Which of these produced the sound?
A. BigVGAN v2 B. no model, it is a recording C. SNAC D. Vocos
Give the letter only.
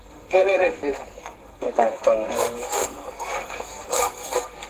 C